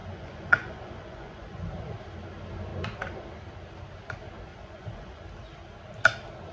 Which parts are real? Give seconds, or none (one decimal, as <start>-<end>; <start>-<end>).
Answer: 1.7-4.5; 5.2-6.5